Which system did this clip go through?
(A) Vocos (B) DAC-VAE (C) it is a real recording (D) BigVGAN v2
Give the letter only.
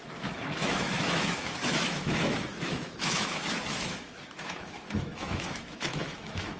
B